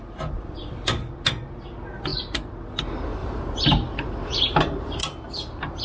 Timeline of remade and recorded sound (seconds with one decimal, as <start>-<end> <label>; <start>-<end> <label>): 0.0-3.2 recorded; 3.2-5.0 remade; 5.0-5.8 recorded